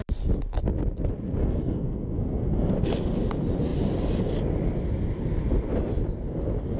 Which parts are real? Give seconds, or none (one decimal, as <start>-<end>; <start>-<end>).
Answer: 0.0-1.4; 2.7-6.8